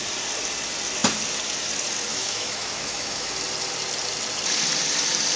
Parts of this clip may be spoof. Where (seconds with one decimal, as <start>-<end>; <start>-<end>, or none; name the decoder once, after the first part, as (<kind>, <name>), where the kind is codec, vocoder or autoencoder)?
2.1-3.3 (autoencoder, DAC-VAE)